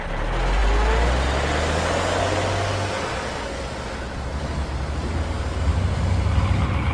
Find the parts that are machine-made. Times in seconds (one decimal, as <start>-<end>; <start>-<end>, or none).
none